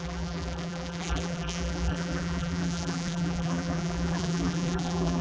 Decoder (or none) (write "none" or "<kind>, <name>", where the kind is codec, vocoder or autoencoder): vocoder, BigVGAN v2